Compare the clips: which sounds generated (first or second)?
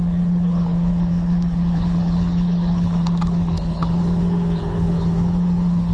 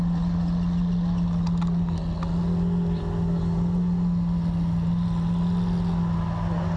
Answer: first